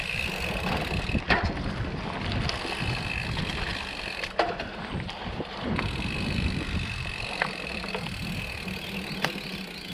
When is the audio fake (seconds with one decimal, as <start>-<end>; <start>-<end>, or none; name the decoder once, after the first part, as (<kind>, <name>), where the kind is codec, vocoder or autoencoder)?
3.7-7.9 (vocoder, BigVGAN v2)